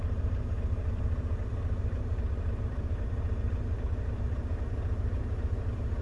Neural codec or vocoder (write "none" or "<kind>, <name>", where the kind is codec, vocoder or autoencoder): vocoder, BigVGAN v2